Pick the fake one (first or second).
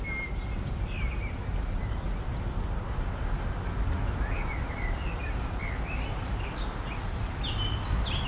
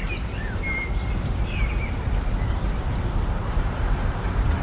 second